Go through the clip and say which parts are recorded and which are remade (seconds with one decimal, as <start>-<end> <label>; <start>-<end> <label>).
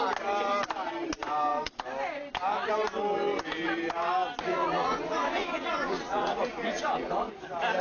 0.0-4.5 recorded; 4.5-7.3 remade; 7.3-7.8 recorded